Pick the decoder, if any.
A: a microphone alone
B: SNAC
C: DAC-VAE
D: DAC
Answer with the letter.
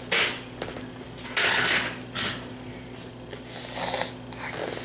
A